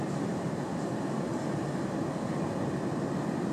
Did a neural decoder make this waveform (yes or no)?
no